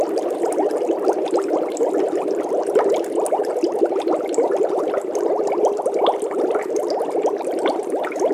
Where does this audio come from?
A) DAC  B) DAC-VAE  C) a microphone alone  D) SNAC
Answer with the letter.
C